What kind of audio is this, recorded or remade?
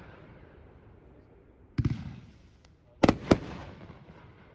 recorded